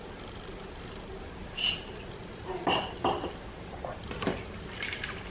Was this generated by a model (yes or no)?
no